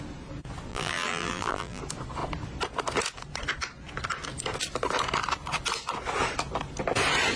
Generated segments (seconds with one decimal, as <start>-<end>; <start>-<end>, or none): 0.7-1.8

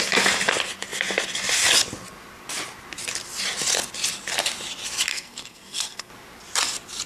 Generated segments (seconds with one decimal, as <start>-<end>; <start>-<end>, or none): 5.1-6.1

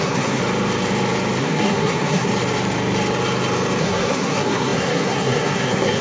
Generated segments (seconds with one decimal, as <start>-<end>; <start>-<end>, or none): 0.0-0.4; 1.4-2.3; 3.8-6.0

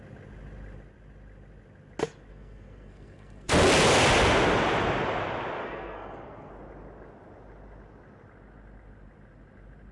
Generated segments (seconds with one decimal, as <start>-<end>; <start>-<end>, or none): 2.3-3.5; 5.6-6.5

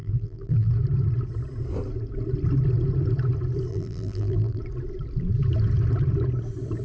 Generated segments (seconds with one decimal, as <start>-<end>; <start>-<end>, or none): 0.0-0.7; 3.7-4.6